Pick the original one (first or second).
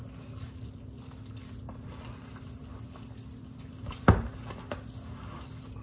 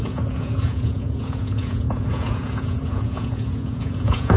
first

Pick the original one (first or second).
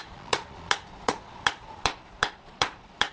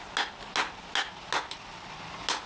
second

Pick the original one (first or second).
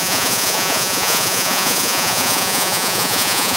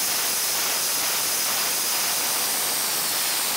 second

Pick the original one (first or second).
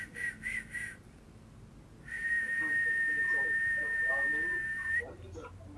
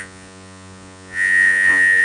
first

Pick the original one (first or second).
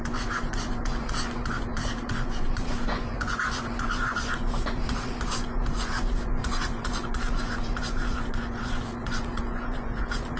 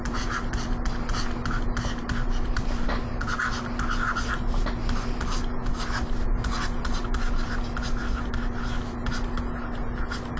second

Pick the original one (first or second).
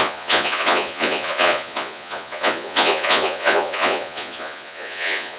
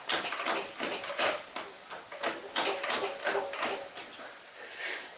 second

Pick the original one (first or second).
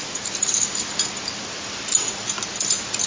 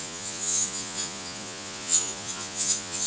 first